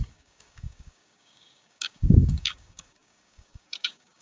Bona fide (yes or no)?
no